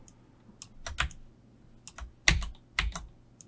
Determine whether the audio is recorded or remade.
recorded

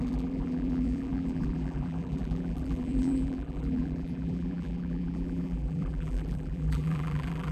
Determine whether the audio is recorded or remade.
remade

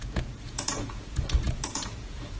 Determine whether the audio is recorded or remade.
remade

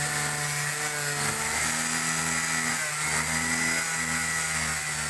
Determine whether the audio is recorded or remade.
recorded